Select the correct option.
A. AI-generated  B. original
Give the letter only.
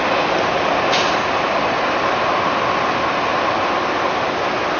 B